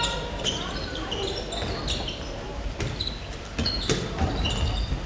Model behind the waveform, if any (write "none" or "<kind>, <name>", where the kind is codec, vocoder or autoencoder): none